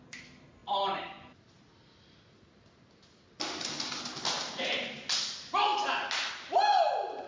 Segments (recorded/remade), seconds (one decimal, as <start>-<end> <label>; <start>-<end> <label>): 0.0-7.3 recorded